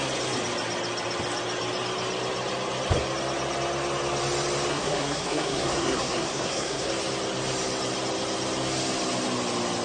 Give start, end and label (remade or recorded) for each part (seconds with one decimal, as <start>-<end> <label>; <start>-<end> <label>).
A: 0.0-4.7 recorded; 4.7-6.9 remade; 6.9-9.8 recorded